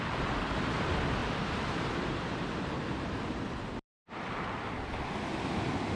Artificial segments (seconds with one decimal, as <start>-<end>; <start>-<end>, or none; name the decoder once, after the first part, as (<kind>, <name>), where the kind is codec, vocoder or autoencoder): 1.2-4.8 (vocoder, BigVGAN v2)